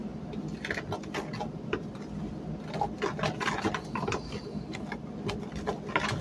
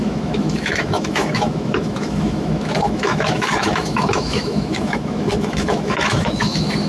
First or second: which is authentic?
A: first